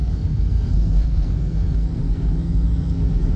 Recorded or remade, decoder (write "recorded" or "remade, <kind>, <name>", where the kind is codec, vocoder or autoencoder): remade, codec, SNAC